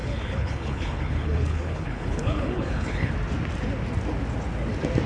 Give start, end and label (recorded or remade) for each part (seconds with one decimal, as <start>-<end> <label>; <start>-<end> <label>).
0.0-3.1 remade; 3.1-5.1 recorded